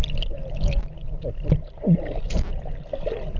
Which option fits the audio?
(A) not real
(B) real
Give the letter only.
B